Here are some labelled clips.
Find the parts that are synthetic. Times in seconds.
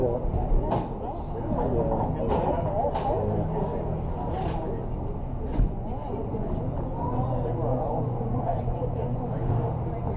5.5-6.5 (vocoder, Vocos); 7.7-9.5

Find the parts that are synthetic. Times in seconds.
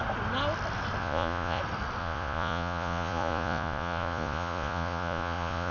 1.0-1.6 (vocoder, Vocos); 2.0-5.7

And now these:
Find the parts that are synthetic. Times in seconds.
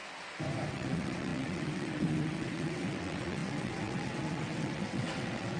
0.7-5.6 (vocoder, WaveNeXt)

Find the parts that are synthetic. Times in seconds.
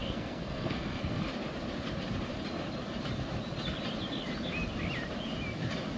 0.0-1.2 (codec, SNAC)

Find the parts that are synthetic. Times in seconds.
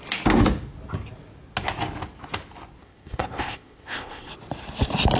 2.8-4.3 (codec, ZipCodec)